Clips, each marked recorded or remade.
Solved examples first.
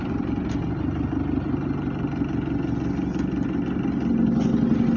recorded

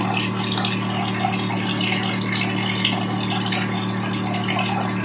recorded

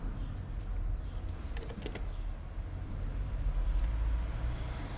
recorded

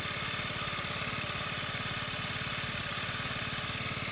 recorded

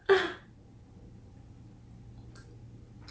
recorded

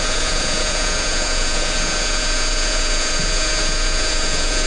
remade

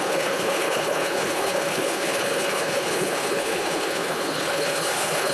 remade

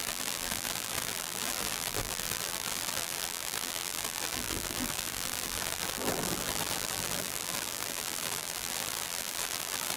remade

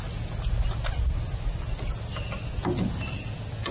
recorded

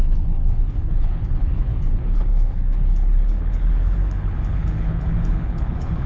remade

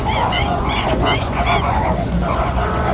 remade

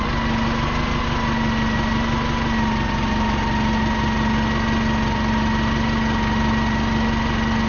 recorded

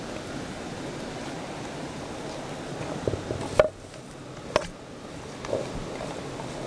recorded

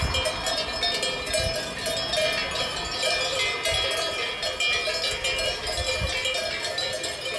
recorded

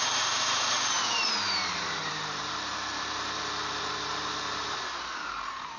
remade